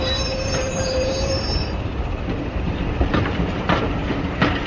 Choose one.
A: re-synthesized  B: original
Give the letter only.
A